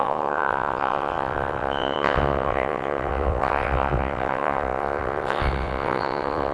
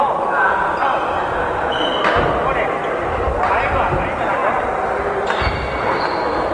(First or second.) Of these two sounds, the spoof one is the first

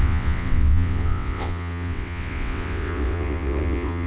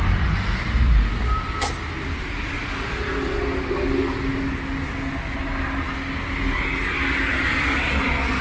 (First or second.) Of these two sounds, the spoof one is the first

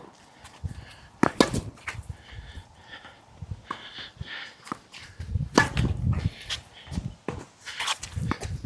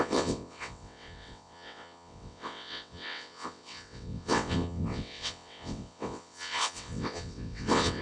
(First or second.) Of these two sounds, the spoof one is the second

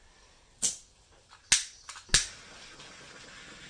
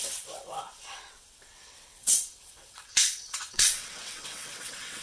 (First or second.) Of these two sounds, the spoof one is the second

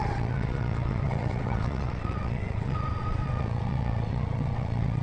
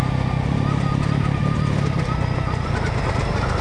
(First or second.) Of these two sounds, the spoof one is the first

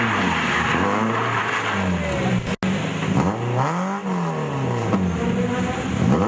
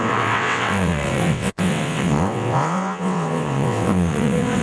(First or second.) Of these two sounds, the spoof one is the second